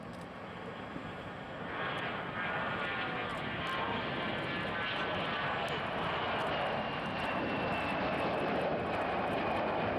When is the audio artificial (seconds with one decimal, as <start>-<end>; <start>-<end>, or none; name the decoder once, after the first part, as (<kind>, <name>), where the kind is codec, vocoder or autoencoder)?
none